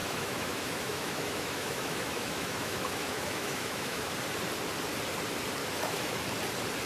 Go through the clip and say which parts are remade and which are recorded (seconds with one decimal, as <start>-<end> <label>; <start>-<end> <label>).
0.0-4.1 remade; 4.1-5.6 recorded; 5.6-6.2 remade; 6.2-6.9 recorded